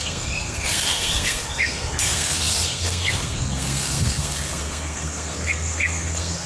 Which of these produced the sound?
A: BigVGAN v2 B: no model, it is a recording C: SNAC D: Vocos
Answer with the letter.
C